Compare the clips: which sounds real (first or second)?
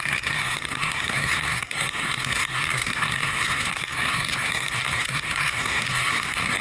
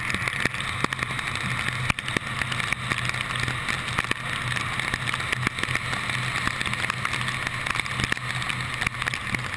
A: second